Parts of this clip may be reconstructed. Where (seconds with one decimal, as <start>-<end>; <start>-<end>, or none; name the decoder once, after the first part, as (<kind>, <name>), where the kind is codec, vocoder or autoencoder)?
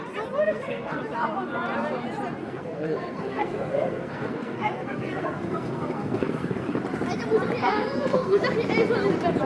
0.4-1.0 (codec, SNAC); 2.4-6.8; 7.6-8.4